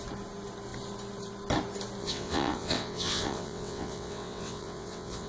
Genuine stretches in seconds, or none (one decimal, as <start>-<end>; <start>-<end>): 0.0-2.0